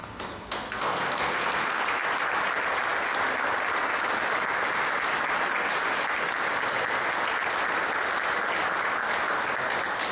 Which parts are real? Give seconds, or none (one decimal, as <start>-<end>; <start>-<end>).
1.8-10.1